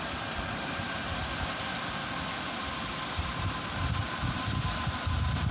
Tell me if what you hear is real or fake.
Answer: fake